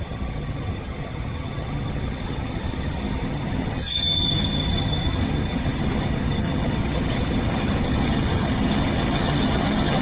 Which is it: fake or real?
fake